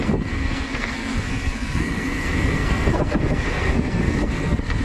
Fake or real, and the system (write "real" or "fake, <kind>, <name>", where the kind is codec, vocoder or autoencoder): fake, codec, SNAC